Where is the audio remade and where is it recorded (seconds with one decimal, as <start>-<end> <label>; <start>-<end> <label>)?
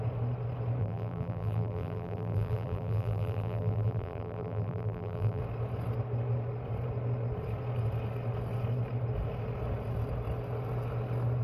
0.0-0.8 recorded; 0.8-5.4 remade; 5.4-11.4 recorded